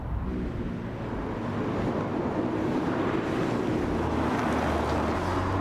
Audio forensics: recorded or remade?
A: recorded